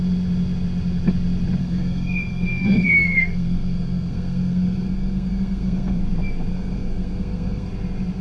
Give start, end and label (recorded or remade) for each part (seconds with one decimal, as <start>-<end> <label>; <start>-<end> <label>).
0.0-1.6 recorded; 1.6-6.0 remade; 6.0-6.5 recorded; 6.5-7.7 remade; 7.7-8.2 recorded